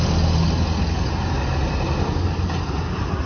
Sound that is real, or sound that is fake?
real